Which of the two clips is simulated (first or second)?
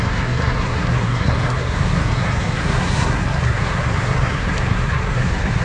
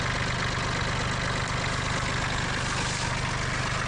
first